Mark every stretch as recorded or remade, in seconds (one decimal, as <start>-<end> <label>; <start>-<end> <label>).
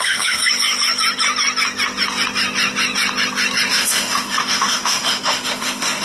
0.0-0.4 remade; 0.4-3.7 recorded; 3.7-6.0 remade